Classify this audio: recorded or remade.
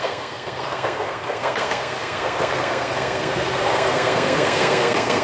remade